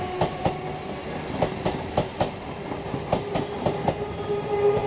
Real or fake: real